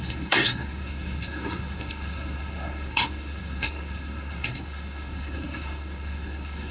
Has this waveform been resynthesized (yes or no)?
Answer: yes